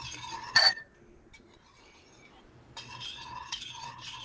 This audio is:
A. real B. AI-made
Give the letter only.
A